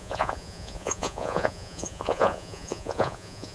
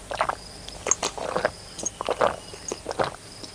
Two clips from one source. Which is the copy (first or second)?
first